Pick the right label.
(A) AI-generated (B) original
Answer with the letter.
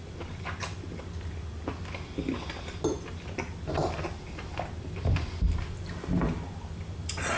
B